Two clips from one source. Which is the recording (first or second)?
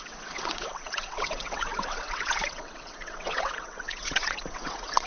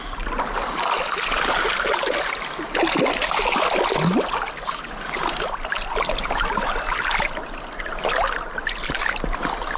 second